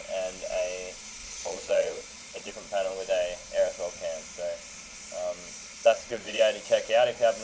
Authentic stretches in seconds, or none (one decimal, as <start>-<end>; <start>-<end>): 0.0-1.2; 2.5-5.6; 6.4-7.4